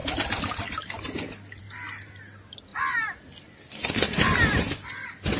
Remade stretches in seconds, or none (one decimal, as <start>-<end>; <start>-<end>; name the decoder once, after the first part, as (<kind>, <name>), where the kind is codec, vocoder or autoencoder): 4.1-5.4 (vocoder, BigVGAN v2)